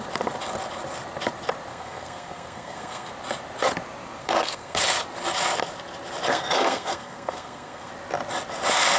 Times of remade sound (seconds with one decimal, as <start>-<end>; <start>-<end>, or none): 1.7-3.1; 4.2-4.8; 6.3-7.9